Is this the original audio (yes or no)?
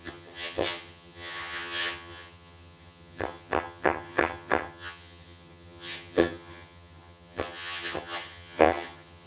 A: no